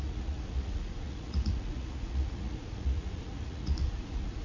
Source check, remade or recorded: remade